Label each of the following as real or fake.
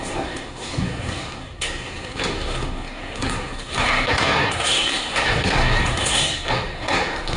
fake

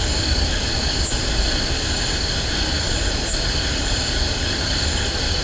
real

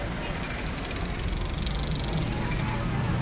real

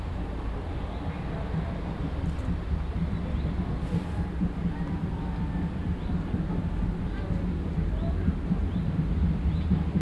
real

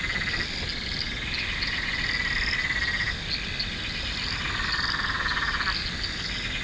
real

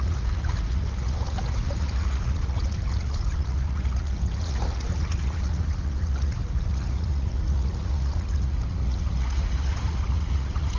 fake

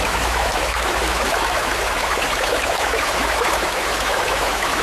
fake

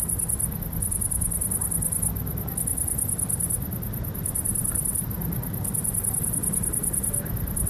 real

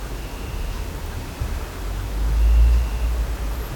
real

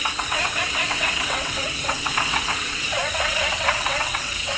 fake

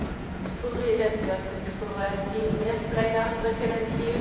fake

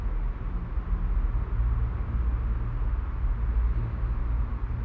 real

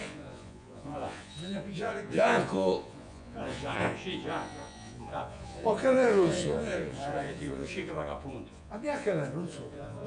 fake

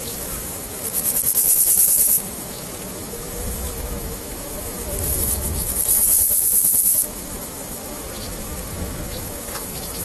fake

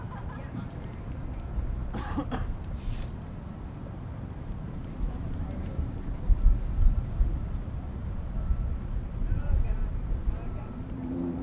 fake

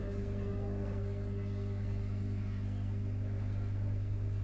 fake